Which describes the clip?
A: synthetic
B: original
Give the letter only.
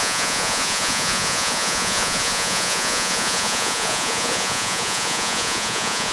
A